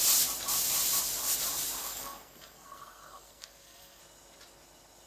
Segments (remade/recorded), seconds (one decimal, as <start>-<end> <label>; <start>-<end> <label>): 0.0-1.8 recorded; 1.8-4.0 remade; 4.0-5.1 recorded